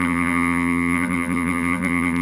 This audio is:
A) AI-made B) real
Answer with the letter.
A